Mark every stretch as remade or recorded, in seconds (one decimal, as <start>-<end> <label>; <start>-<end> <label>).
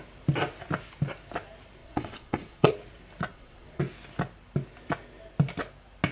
0.0-1.8 recorded; 1.8-2.7 remade; 2.7-3.3 recorded; 3.3-3.8 remade; 3.8-6.1 recorded